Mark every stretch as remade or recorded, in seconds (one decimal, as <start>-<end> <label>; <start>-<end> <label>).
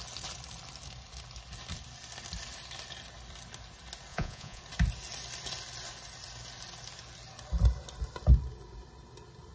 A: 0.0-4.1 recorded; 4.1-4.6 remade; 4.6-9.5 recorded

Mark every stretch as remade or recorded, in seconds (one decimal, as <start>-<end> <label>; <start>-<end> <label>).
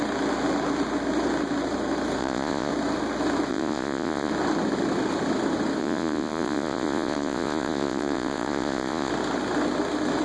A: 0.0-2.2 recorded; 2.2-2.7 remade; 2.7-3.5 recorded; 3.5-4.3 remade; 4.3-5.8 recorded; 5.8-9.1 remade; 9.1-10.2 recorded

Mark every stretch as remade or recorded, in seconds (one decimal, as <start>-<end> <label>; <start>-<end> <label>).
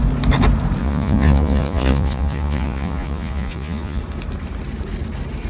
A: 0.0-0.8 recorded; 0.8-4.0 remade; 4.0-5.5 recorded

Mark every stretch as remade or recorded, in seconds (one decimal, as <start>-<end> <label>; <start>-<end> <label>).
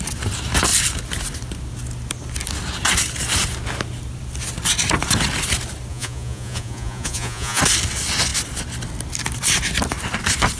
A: 0.0-5.9 recorded; 5.9-7.6 remade; 7.6-10.6 recorded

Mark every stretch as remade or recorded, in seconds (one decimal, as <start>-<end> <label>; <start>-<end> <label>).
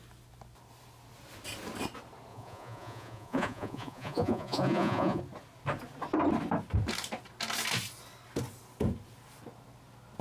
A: 0.0-2.3 recorded; 2.3-5.2 remade; 5.2-10.2 recorded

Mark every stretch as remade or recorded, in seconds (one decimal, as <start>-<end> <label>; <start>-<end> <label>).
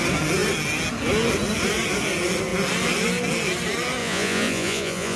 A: 0.0-4.0 recorded; 4.0-5.2 remade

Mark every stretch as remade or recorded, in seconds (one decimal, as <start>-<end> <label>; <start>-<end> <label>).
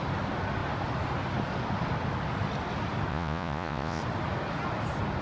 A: 0.0-3.1 recorded; 3.1-4.0 remade; 4.0-5.2 recorded